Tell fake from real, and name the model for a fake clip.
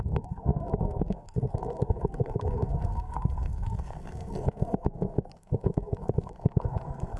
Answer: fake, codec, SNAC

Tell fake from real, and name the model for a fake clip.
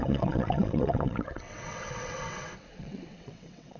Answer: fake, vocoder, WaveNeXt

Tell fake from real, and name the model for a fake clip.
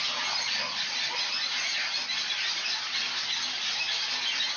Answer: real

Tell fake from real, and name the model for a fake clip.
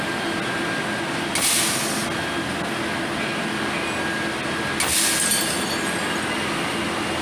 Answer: real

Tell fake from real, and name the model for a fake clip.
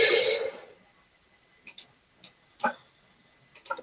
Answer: real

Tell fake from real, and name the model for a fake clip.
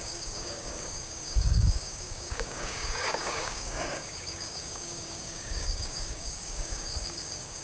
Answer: fake, codec, DAC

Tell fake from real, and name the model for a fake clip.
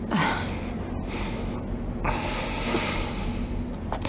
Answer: real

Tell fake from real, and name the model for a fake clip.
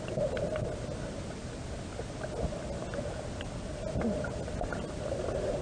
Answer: real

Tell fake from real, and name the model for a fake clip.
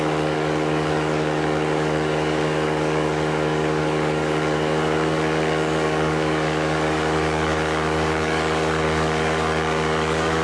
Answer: fake, codec, DAC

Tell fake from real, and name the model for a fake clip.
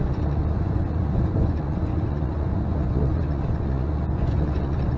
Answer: fake, vocoder, Vocos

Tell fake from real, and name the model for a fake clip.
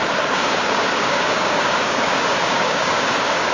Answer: fake, codec, DAC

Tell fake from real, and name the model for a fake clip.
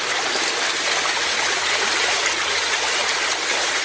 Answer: real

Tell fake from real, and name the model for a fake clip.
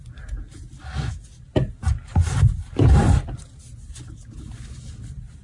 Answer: real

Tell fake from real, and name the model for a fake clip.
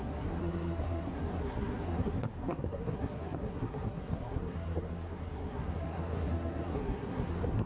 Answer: fake, codec, SNAC